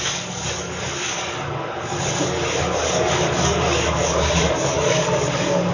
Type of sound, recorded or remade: remade